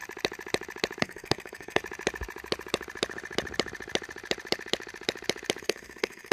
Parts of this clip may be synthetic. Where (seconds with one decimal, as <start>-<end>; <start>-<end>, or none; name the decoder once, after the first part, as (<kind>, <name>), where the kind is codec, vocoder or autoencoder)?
1.0-1.8 (codec, SNAC); 5.6-6.3